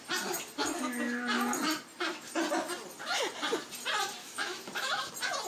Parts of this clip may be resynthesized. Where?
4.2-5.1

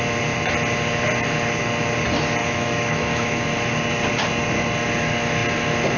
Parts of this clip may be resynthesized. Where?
2.4-3.5

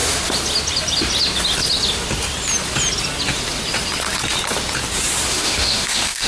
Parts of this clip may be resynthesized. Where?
5.3-6.3

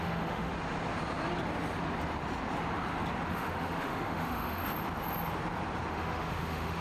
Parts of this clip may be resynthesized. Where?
0.0-0.5; 3.3-4.6; 5.9-6.8

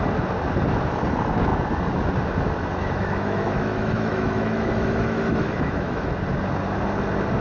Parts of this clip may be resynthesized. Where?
2.8-6.1

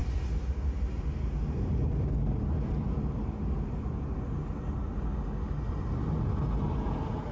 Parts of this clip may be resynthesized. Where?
none

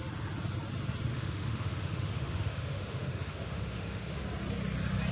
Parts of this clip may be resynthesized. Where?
1.1-4.2

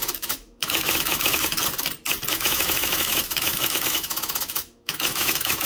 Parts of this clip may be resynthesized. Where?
0.0-1.6; 2.3-5.7